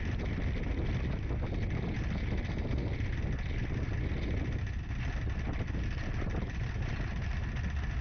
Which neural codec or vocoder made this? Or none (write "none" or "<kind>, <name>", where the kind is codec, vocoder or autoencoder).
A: none